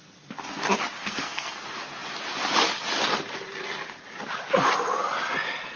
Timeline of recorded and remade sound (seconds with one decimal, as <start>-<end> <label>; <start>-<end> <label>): 0.0-1.0 recorded; 1.0-1.6 remade; 1.6-5.8 recorded